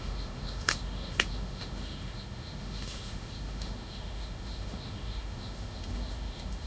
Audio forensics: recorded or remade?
remade